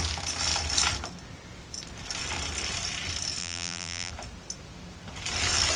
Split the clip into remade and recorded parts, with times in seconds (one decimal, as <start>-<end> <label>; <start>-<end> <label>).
0.0-3.4 recorded; 3.4-4.1 remade; 4.1-5.8 recorded